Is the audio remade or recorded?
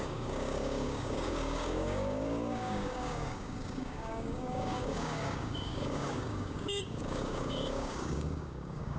remade